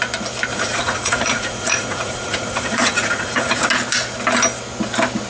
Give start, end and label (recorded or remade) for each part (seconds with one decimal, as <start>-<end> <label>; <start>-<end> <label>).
0.0-0.5 recorded; 0.5-3.7 remade; 3.7-5.3 recorded